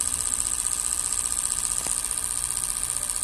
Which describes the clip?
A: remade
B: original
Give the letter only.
B